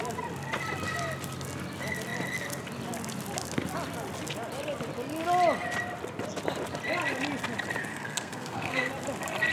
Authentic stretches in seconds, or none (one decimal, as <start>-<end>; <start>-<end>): 0.0-7.9; 8.9-9.5